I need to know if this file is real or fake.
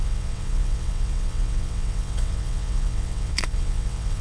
fake